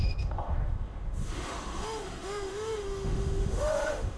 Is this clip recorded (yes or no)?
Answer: no